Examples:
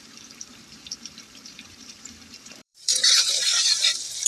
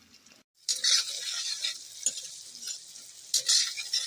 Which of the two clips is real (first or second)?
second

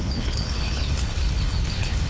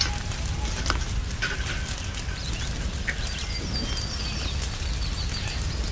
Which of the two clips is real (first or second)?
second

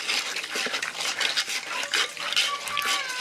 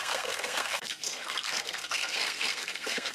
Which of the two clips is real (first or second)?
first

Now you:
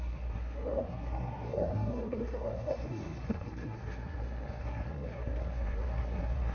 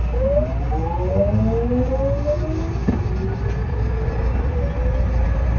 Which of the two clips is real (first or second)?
second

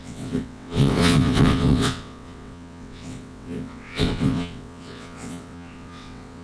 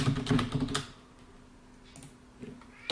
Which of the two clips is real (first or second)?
second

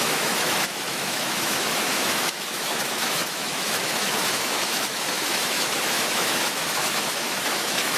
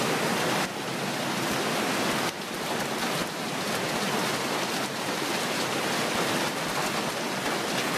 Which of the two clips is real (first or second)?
second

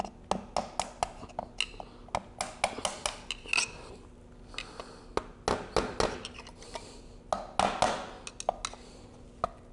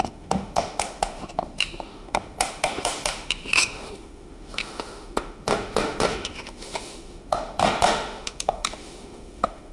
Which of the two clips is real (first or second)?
first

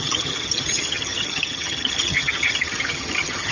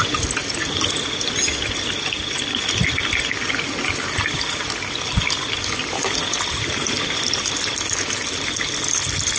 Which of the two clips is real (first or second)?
second